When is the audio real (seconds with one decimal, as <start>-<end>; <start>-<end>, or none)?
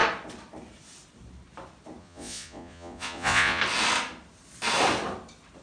0.0-2.0; 3.6-5.6